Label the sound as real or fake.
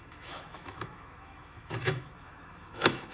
fake